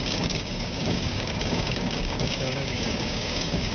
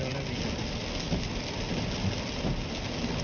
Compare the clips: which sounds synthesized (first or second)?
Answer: first